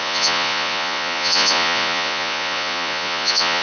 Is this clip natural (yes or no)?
no